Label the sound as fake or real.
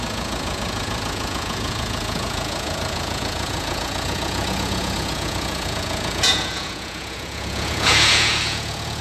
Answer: fake